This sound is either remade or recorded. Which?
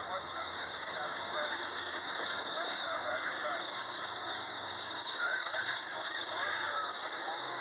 remade